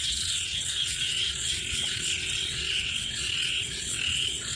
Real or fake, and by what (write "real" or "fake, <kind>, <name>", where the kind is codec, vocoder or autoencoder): fake, vocoder, WaveNeXt